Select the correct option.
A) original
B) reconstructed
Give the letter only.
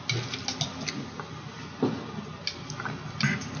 A